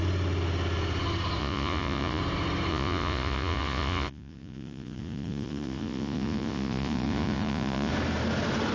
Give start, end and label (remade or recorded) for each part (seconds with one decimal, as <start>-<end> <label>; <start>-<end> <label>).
0.0-1.4 recorded; 1.4-2.2 remade; 2.2-2.7 recorded; 2.7-7.9 remade; 7.9-8.7 recorded